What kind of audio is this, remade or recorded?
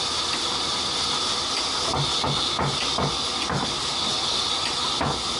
recorded